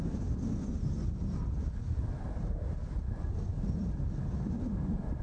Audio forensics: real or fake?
real